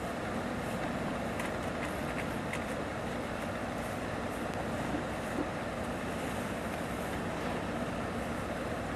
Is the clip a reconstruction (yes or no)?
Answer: no